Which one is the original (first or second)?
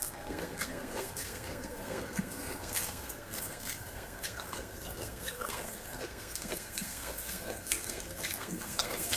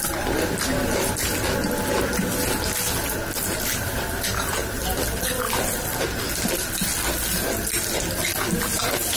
second